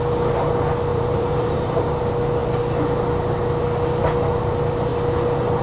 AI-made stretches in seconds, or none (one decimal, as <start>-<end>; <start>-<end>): 0.9-2.0